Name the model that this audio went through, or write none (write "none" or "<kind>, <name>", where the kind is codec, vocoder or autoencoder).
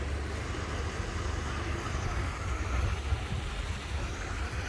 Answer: none